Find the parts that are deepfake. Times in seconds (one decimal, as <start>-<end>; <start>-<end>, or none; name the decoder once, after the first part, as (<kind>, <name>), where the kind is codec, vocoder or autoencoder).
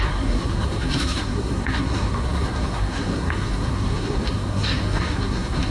0.0-5.7 (codec, SNAC)